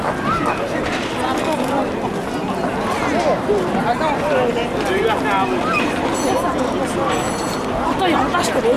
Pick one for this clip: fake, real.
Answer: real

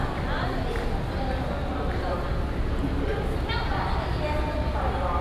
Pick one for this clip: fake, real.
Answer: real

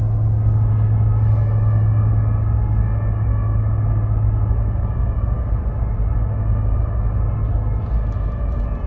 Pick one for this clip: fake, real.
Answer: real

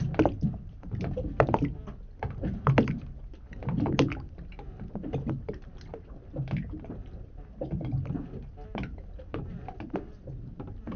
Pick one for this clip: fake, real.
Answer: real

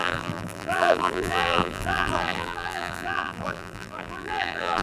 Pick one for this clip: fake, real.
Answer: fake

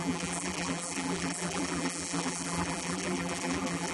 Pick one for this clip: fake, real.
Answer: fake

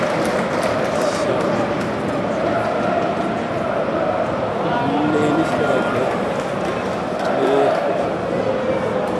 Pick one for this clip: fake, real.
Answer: real